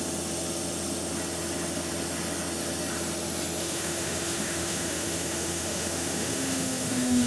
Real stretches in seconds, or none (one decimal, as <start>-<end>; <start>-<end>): 0.0-3.6